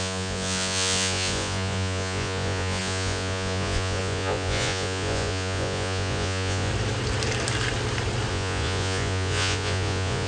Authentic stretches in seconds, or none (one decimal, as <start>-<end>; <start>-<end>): 6.7-8.3